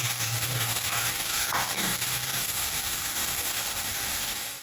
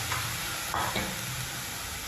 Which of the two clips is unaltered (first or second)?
second